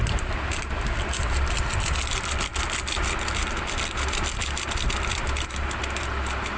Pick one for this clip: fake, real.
real